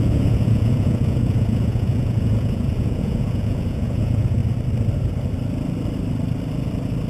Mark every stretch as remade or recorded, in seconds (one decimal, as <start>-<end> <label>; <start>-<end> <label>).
0.0-4.4 remade; 4.4-7.1 recorded